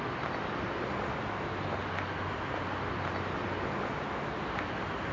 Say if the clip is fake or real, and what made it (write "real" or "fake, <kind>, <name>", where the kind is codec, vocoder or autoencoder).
real